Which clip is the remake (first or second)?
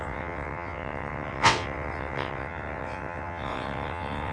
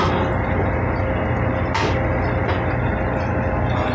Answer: first